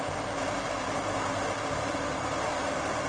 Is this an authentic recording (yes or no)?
yes